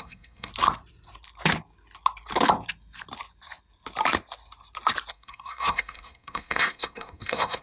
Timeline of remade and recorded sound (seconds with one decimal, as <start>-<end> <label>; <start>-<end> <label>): 0.0-0.5 remade; 0.5-5.1 recorded; 5.1-7.6 remade